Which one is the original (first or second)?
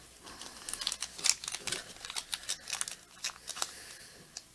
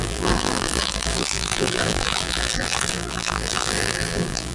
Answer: first